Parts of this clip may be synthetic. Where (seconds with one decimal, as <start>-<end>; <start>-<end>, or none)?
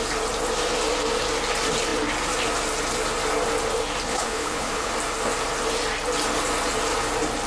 4.1-4.9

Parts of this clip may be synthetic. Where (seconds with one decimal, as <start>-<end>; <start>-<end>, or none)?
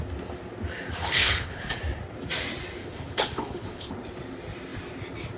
1.0-1.8; 2.8-3.9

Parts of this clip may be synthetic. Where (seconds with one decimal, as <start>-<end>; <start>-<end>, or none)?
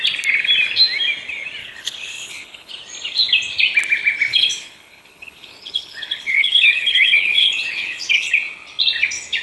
1.6-2.7; 4.3-8.3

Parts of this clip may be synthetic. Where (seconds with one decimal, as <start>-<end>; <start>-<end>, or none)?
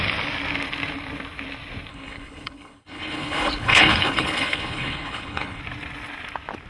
1.9-5.6